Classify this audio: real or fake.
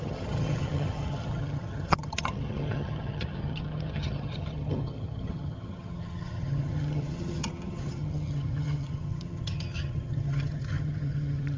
fake